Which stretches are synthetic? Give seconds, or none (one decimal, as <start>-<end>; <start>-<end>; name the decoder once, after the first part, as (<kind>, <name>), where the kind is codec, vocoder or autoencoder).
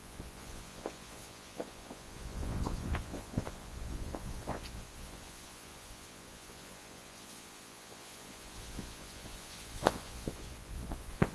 0.0-11.3 (vocoder, Vocos)